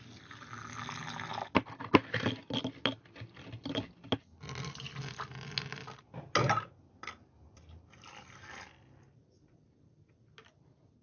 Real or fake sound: real